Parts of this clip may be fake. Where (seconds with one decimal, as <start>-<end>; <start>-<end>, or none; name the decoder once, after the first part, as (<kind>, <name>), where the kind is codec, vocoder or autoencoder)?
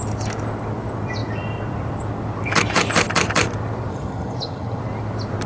3.9-4.8 (vocoder, HiFi-GAN)